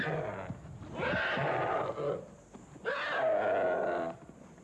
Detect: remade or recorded recorded